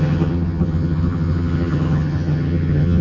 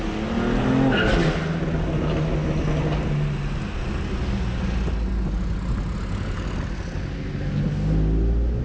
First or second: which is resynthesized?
first